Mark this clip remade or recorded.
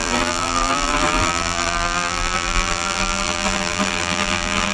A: remade